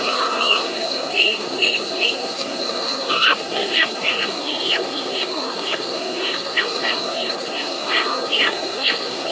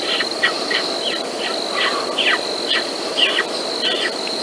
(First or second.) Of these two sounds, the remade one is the first